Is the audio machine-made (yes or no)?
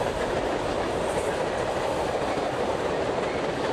no